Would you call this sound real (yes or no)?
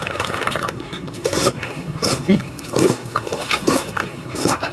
no